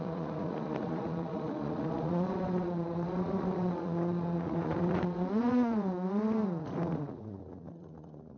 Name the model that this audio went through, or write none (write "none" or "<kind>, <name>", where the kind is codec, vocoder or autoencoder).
vocoder, Vocos